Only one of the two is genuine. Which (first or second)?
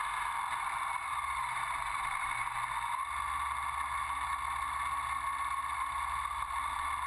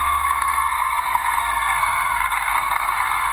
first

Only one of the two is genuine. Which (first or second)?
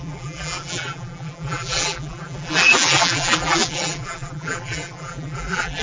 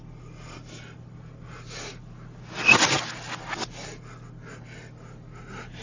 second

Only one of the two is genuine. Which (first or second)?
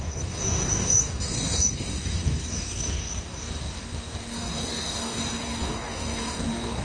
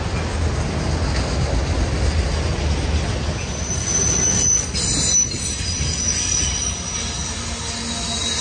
second